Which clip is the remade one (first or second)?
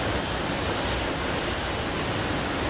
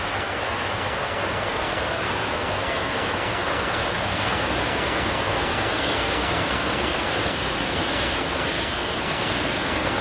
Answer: second